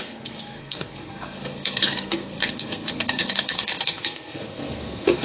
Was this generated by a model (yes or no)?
yes